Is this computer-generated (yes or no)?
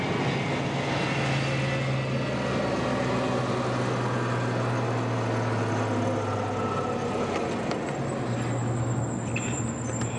no